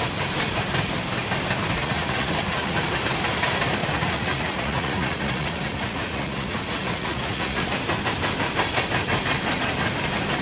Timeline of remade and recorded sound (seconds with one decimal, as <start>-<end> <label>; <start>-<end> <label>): 0.0-1.8 recorded; 1.8-2.8 remade; 2.8-3.8 recorded; 3.8-7.7 remade; 7.7-10.4 recorded